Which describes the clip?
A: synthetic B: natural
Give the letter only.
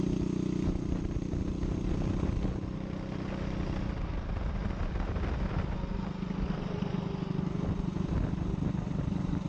B